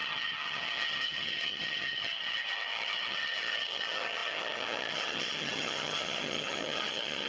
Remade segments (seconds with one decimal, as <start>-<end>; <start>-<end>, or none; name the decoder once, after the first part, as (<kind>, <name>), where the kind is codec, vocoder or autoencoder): 0.0-7.3 (vocoder, HiFi-GAN)